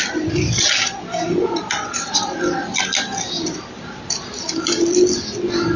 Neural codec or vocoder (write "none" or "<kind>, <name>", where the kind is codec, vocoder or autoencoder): none